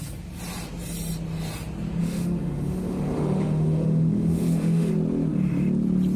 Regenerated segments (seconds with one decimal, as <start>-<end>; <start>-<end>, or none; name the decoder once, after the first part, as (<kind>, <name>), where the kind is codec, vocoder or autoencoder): 2.0-4.9 (autoencoder, DAC-VAE)